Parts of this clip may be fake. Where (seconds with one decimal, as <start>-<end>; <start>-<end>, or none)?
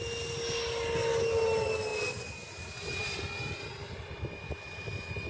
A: none